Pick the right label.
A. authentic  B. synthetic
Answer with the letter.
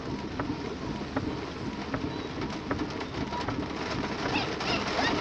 A